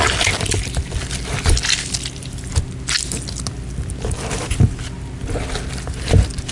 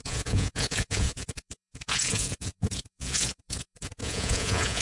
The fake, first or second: second